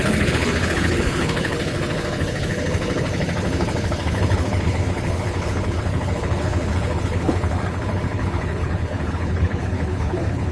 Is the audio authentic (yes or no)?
no